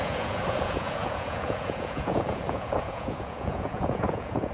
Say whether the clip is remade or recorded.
remade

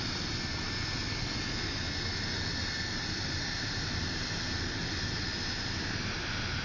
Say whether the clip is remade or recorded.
recorded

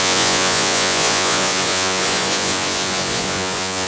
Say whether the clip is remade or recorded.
remade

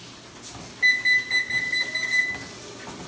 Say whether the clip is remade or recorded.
recorded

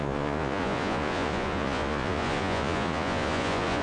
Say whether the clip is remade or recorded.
remade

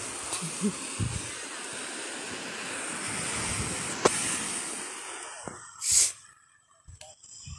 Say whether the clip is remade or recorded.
recorded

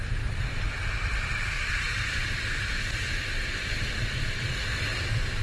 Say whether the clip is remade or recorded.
recorded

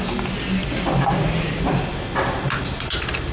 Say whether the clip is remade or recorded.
recorded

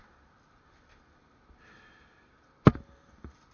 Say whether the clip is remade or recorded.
recorded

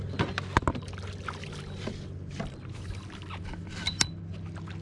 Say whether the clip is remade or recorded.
recorded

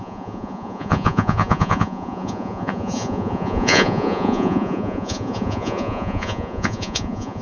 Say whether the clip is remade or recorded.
remade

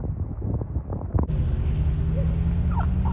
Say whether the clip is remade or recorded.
recorded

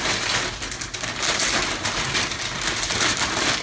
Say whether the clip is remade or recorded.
recorded